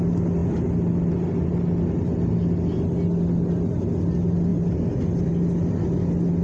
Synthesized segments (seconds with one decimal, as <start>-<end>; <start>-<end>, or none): none